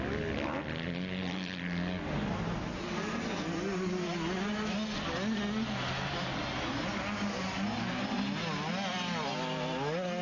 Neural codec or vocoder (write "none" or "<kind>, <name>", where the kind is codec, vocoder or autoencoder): none